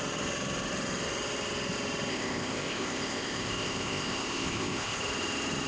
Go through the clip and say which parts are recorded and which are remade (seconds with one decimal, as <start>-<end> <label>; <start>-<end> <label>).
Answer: 0.0-2.1 recorded; 2.1-5.0 remade; 5.0-5.7 recorded